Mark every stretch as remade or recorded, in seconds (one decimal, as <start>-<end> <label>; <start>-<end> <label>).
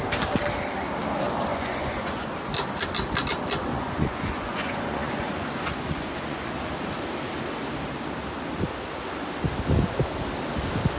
0.0-1.5 recorded; 1.5-2.3 remade; 2.3-3.7 recorded; 3.7-6.5 remade; 6.5-11.0 recorded